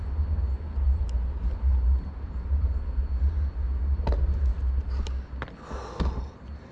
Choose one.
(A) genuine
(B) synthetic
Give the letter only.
A